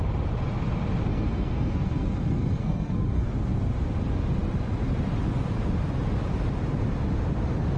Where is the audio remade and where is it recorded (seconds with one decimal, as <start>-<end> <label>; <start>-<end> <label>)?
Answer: 0.0-1.1 recorded; 1.1-3.3 remade; 3.3-7.8 recorded

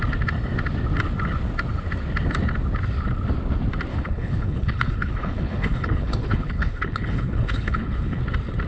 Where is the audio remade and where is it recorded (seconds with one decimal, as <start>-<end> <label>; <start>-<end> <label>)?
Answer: 0.0-3.9 recorded; 3.9-8.2 remade; 8.2-8.7 recorded

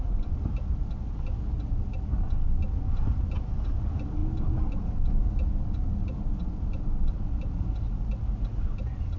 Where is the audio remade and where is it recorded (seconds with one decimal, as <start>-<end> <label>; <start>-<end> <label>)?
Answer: 0.0-9.2 recorded

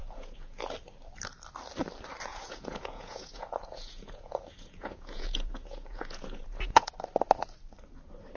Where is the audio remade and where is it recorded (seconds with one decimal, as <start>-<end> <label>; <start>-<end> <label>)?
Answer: 0.0-0.6 remade; 0.6-2.3 recorded; 2.3-6.9 remade; 6.9-8.4 recorded

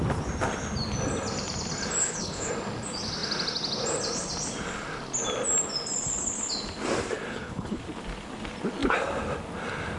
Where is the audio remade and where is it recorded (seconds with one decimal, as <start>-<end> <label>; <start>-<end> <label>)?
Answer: 0.0-2.0 recorded; 2.0-2.5 remade; 2.5-7.3 recorded; 7.3-7.8 remade; 7.8-10.0 recorded

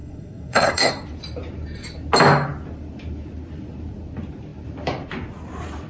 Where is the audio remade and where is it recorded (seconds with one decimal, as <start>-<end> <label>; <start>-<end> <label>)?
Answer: 0.0-0.9 remade; 0.9-5.9 recorded